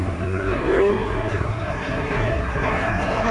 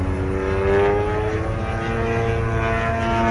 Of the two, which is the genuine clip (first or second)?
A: second